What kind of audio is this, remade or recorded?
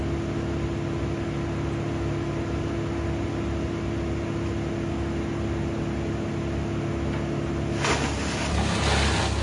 recorded